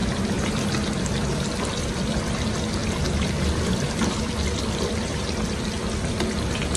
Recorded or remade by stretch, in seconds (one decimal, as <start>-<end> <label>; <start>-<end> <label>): 0.0-0.6 remade; 0.6-2.8 recorded; 2.8-5.6 remade; 5.6-6.8 recorded